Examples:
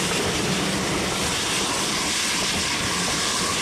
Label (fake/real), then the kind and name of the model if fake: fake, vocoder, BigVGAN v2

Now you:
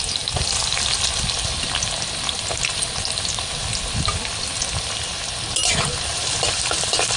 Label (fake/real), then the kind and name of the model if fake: real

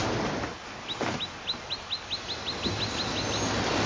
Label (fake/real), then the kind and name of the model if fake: real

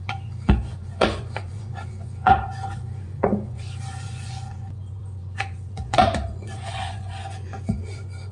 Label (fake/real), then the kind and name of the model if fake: fake, vocoder, Vocos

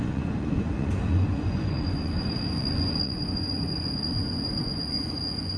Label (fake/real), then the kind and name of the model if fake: fake, vocoder, Vocos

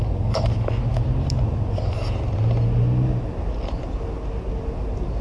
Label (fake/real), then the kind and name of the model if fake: real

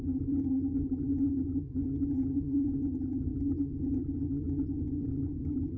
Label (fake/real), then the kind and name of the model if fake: fake, vocoder, HiFi-GAN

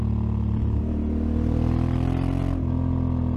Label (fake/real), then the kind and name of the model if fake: real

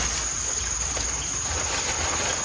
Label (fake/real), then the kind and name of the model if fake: real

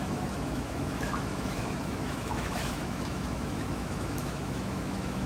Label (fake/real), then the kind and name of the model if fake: fake, autoencoder, DAC-VAE